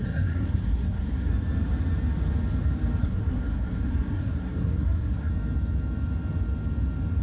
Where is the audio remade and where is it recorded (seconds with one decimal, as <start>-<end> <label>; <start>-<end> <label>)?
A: 0.0-1.3 remade; 1.3-3.0 recorded; 3.0-5.3 remade; 5.3-7.2 recorded